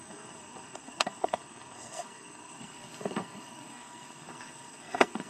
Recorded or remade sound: remade